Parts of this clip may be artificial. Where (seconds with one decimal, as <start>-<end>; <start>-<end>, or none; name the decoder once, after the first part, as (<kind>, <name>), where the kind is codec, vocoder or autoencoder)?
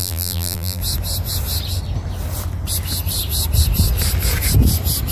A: 0.0-0.8 (vocoder, BigVGAN v2)